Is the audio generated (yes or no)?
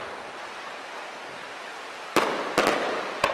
no